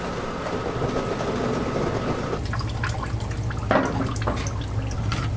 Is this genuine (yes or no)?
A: yes